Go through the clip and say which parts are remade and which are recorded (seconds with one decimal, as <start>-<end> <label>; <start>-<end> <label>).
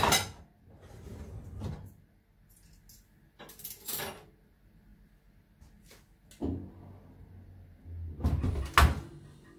0.0-9.6 recorded